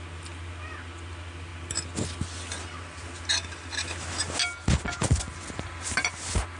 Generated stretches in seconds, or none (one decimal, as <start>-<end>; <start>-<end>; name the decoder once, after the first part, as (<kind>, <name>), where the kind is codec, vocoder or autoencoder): none